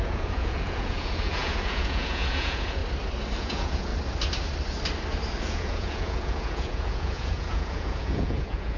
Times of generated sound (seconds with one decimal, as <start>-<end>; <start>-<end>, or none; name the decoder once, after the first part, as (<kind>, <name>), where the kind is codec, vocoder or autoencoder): 0.0-2.8 (vocoder, Vocos); 3.4-3.9; 5.4-8.8